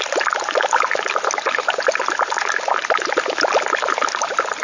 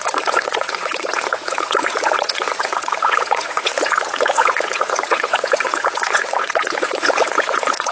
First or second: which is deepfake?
second